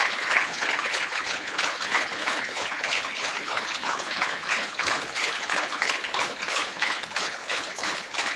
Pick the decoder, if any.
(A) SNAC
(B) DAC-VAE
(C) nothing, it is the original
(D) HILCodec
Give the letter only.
D